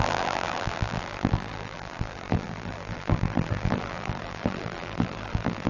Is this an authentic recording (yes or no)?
no